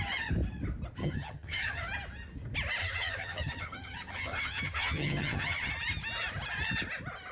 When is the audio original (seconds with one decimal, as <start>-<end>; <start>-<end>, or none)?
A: 0.0-1.0; 1.8-2.8; 5.7-7.3